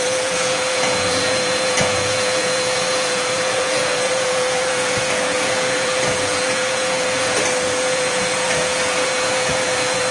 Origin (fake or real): fake